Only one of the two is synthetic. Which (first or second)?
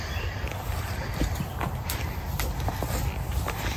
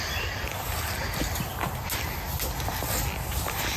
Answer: first